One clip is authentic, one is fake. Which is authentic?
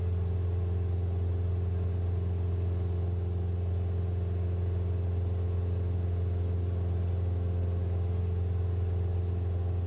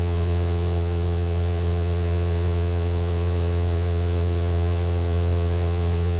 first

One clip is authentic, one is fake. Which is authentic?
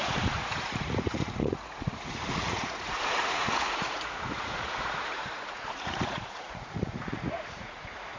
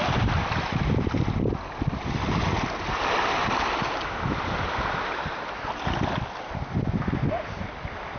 second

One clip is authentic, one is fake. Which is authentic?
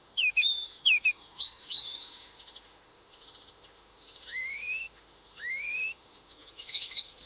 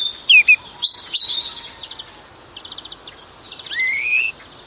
second